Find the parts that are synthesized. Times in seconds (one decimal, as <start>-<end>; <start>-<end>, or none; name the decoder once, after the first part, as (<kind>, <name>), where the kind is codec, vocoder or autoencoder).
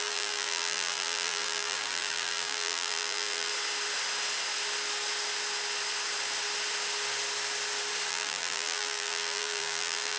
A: 0.0-3.5 (vocoder, BigVGAN v2); 8.1-10.2